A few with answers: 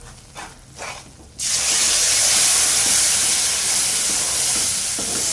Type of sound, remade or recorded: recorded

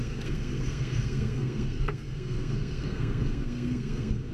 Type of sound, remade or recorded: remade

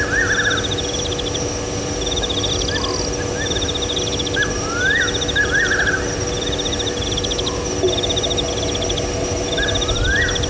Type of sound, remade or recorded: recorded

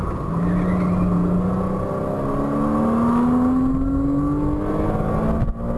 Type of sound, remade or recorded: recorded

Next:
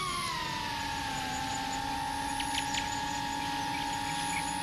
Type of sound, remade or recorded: recorded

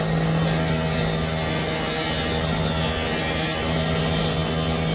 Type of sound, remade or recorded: recorded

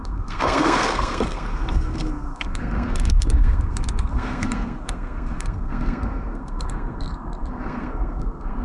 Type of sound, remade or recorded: remade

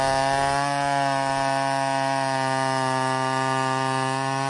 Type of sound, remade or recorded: recorded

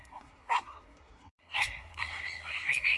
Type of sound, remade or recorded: remade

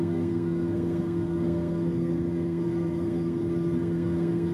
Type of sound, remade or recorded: remade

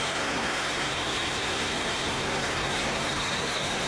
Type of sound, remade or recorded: remade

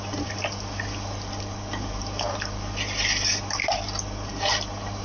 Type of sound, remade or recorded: recorded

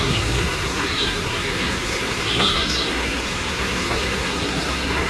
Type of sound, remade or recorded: remade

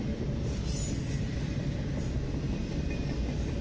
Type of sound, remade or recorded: recorded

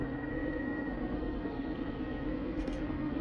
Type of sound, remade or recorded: remade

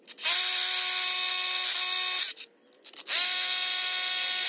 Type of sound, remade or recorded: recorded